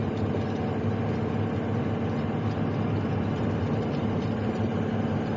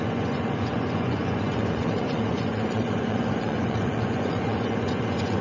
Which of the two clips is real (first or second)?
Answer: first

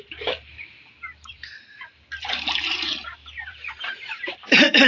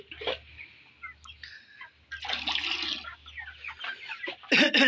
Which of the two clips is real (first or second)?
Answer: second